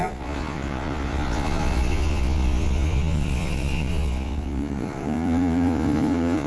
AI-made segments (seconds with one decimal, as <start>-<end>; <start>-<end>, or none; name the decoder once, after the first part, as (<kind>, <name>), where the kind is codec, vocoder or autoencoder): 0.0-6.5 (vocoder, Vocos)